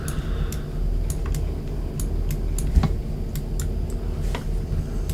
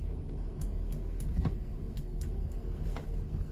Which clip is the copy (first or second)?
second